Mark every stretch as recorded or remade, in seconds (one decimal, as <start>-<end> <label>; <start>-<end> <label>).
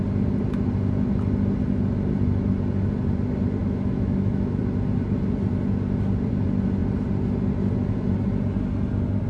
0.0-3.6 recorded; 3.6-4.6 remade; 4.6-9.3 recorded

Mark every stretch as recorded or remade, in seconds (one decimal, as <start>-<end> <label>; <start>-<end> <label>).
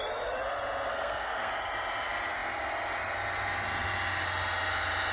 0.0-0.9 recorded; 0.9-1.5 remade; 1.5-5.1 recorded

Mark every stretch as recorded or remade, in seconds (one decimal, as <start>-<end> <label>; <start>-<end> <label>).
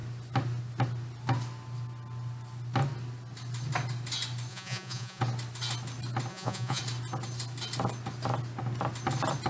0.0-4.5 recorded; 4.5-5.2 remade; 5.2-6.3 recorded; 6.3-6.8 remade; 6.8-9.5 recorded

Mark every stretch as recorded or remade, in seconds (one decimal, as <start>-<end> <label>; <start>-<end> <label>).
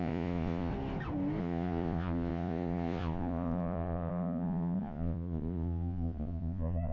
0.0-0.7 remade; 0.7-1.4 recorded; 1.4-6.9 remade